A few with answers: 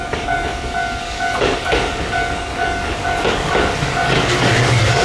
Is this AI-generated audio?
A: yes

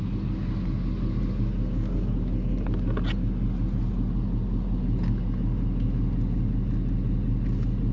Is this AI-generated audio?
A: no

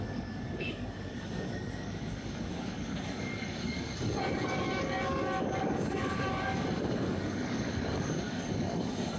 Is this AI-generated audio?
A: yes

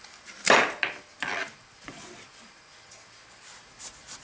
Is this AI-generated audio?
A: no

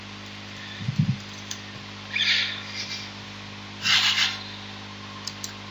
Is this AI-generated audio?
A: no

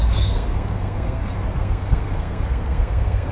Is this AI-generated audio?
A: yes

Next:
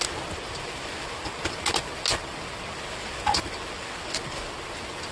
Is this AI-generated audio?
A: no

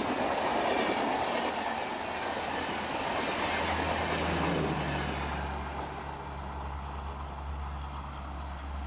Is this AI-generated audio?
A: no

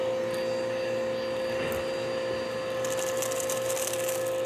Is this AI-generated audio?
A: no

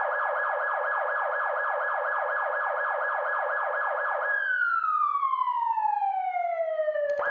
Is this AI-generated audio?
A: no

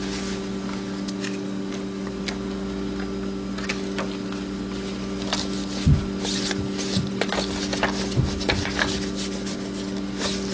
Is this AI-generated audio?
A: no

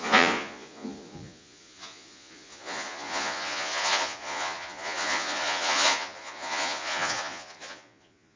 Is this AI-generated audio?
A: yes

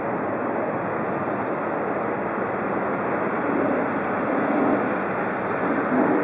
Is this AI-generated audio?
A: no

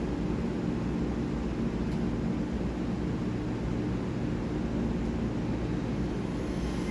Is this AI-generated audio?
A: no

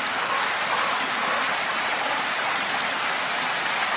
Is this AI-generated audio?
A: no